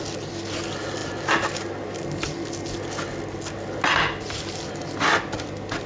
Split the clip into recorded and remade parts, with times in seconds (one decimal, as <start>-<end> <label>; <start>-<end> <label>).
0.0-5.9 recorded